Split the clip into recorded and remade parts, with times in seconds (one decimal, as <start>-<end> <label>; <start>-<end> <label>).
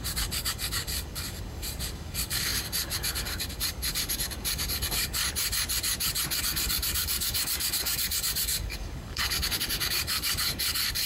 0.0-5.2 remade; 5.2-6.4 recorded; 6.4-11.1 remade